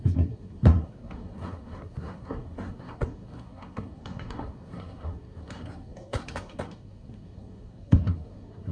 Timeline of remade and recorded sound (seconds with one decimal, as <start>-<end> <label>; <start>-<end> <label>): 0.0-8.7 remade